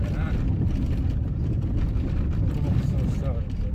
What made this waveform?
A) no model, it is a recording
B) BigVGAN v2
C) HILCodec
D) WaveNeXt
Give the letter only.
B